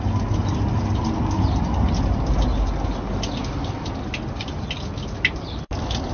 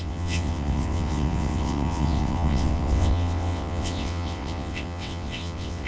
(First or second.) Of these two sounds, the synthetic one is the second